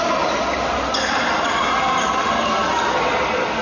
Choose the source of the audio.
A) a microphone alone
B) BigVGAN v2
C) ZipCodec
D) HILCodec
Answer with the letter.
A